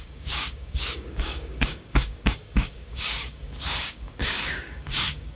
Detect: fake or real fake